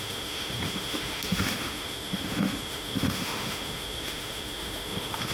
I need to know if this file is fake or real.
fake